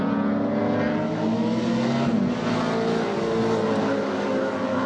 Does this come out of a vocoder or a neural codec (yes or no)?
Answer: no